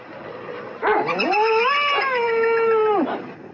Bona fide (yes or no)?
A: yes